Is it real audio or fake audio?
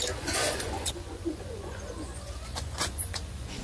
fake